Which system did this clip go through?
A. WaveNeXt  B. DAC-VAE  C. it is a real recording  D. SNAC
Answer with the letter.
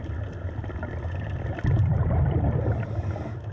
C